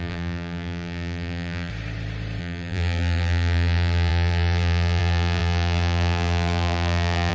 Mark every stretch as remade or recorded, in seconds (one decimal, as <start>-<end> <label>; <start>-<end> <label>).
0.0-1.7 remade; 1.7-2.4 recorded; 2.4-7.3 remade